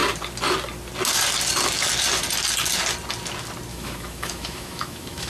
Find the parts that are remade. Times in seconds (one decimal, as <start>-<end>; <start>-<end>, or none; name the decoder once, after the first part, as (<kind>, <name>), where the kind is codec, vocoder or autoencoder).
3.7-5.3 (autoencoder, DAC-VAE)